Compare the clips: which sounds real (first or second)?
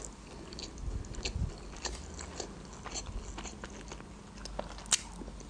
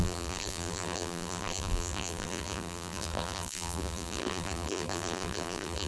first